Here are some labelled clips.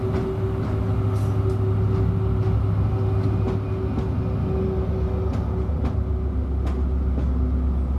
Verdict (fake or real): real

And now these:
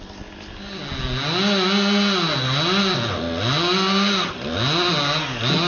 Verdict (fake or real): real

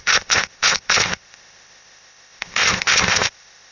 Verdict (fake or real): fake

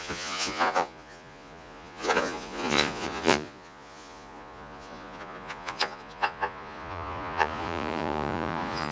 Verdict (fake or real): fake